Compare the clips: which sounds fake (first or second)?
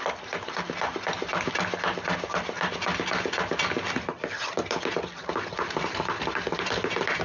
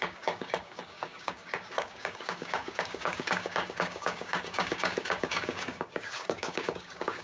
second